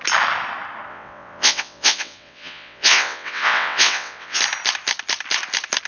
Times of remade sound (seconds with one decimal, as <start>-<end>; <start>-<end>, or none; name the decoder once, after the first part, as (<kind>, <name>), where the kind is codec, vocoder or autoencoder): 0.9-4.4 (vocoder, WaveNeXt)